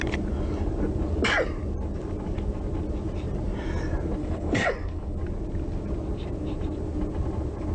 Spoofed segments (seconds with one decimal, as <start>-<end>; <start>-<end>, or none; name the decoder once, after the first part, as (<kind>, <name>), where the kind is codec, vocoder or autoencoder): 4.2-5.2 (codec, DAC)